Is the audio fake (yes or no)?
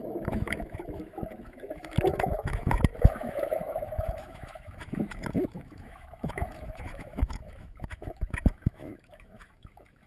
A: yes